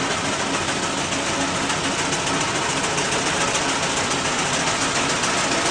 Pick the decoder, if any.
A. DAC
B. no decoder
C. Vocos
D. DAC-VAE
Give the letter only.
B